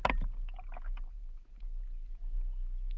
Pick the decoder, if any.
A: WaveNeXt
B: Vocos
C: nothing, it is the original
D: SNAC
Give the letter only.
C